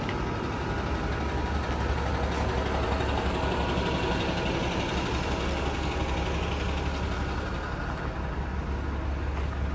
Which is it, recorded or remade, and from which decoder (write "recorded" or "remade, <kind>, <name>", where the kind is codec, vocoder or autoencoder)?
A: recorded